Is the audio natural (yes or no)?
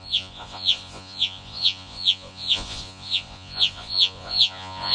no